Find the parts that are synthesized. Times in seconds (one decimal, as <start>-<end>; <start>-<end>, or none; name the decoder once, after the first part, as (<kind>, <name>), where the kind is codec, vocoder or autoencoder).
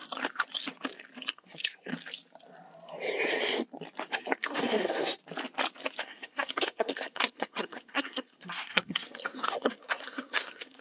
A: 1.3-1.9 (codec, SNAC); 4.1-5.2; 6.0-10.8